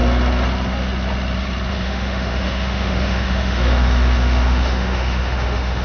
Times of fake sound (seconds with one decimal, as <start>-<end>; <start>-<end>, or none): 1.7-5.8